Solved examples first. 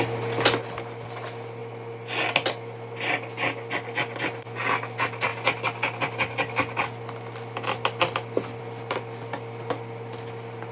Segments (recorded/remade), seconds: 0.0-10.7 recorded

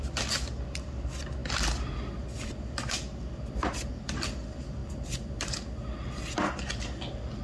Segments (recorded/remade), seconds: 0.0-7.4 recorded

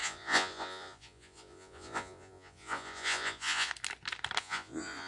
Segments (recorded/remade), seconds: 0.0-3.7 remade; 3.7-4.4 recorded; 4.4-5.1 remade

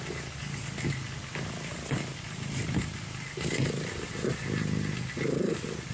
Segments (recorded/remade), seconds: 0.0-0.4 recorded; 0.4-3.9 remade; 3.9-5.9 recorded